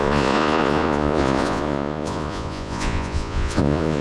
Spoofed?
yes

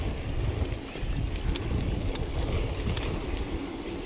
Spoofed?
no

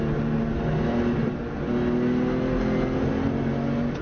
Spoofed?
no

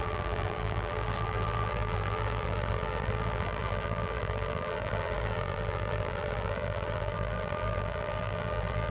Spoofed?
yes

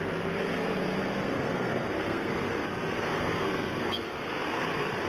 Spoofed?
yes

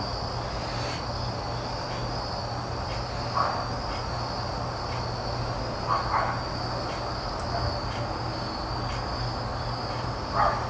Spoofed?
no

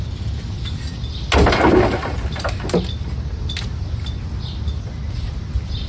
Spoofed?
no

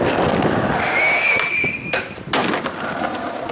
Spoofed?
no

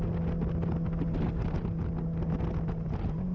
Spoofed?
no